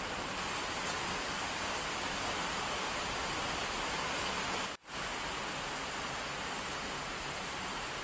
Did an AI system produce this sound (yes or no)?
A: no